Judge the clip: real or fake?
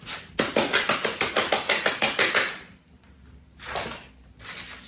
real